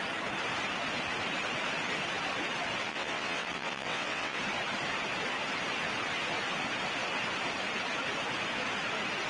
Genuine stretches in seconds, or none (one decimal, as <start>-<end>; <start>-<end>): 0.0-2.8; 4.4-9.3